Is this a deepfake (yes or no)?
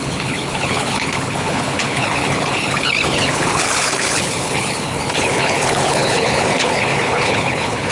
yes